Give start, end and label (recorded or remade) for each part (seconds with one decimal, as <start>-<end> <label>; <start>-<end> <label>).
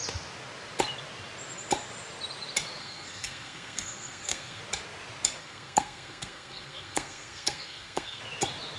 0.0-2.8 recorded; 2.8-4.6 remade; 4.6-5.4 recorded; 5.4-8.2 remade; 8.2-8.8 recorded